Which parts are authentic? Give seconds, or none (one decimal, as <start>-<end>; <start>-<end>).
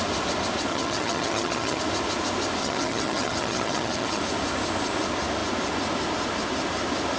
0.0-0.7; 1.8-2.6; 4.2-7.2